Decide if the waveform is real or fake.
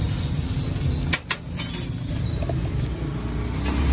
real